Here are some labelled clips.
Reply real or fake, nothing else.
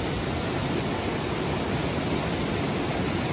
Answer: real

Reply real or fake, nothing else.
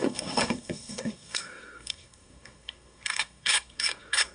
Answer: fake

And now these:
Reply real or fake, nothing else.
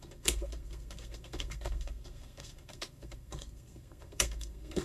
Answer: fake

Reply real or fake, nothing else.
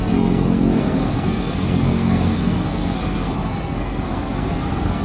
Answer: fake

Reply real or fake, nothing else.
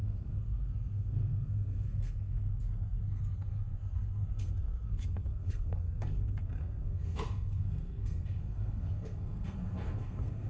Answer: fake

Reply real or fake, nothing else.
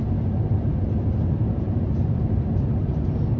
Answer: real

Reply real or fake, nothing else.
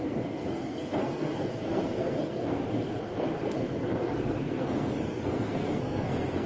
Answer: fake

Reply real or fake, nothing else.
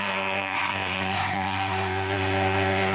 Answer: fake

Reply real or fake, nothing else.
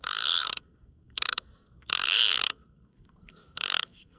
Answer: fake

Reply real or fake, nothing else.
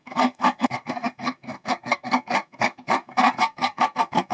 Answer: fake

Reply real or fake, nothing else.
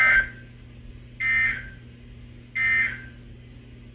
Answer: real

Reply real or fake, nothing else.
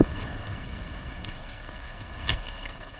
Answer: fake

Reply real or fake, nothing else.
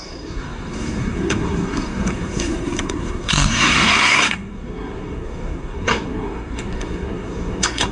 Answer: fake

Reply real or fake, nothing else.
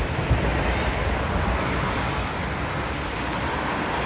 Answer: real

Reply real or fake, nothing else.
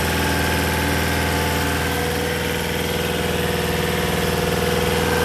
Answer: real